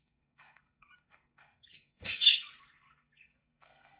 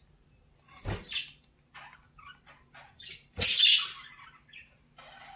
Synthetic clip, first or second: first